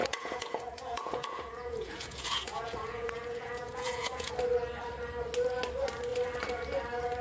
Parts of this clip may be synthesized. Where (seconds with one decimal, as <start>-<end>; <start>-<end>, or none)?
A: 0.0-4.3